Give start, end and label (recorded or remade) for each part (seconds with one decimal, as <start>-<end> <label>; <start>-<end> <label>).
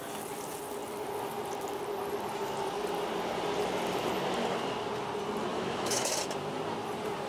0.0-5.5 recorded; 5.5-6.1 remade; 6.1-7.3 recorded